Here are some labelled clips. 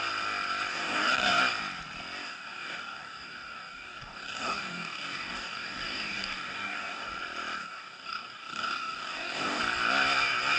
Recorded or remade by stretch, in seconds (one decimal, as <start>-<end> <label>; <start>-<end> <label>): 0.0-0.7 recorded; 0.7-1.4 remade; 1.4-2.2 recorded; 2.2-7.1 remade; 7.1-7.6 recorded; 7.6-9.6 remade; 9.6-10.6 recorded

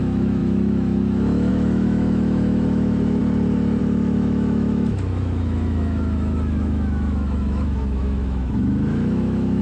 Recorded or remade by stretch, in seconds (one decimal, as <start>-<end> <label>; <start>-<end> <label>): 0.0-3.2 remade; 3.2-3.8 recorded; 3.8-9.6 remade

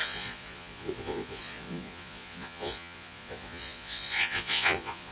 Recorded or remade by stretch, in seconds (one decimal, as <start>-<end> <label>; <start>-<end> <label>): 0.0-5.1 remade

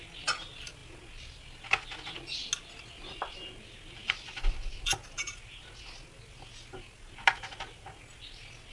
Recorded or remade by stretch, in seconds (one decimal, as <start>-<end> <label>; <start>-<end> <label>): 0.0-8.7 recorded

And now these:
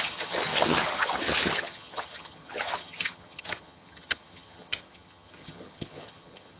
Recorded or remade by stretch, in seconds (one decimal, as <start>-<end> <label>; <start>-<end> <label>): 0.0-6.6 remade